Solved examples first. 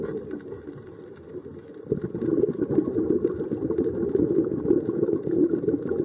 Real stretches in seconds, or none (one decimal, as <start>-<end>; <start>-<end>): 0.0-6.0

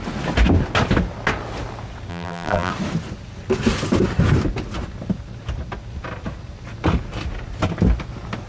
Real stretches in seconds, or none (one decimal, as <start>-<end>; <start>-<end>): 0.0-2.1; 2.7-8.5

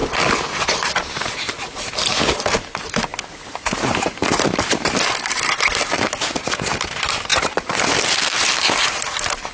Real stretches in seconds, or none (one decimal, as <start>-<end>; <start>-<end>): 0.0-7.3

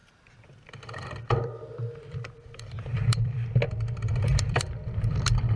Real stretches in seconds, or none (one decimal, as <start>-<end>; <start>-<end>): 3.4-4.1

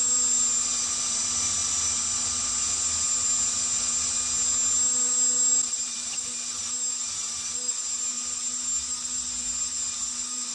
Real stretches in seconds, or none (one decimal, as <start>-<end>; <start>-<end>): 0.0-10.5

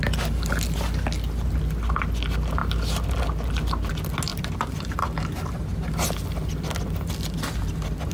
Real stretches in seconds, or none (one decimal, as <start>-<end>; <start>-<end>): 0.0-4.3; 5.0-8.1